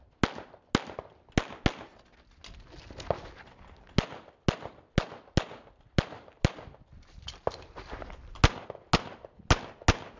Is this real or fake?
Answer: real